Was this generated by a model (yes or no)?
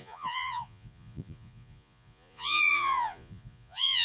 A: yes